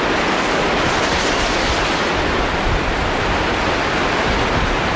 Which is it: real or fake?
real